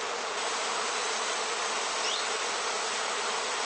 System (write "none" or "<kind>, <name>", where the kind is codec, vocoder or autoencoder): none